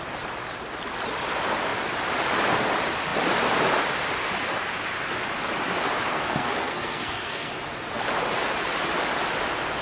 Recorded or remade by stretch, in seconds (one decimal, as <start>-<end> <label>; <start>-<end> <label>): 0.0-6.1 recorded; 6.1-7.5 remade; 7.5-9.8 recorded